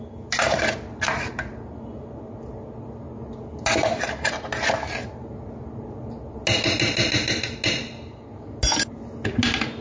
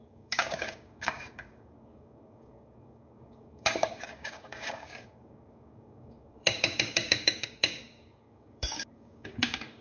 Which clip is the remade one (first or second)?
second